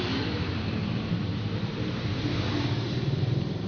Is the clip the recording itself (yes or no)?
no